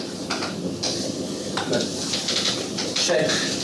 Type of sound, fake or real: real